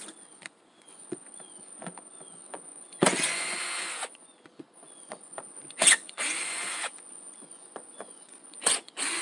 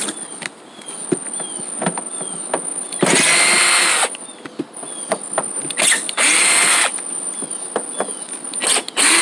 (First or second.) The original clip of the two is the second